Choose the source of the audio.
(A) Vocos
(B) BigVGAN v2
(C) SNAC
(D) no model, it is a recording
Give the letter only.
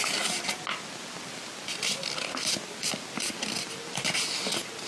D